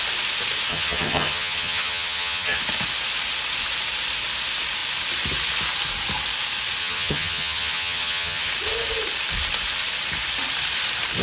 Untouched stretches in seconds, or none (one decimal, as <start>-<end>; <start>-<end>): 0.0-0.7; 2.6-6.8; 8.5-11.2

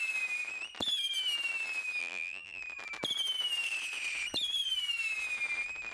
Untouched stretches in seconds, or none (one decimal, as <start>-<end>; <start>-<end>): 0.0-2.0; 2.6-5.9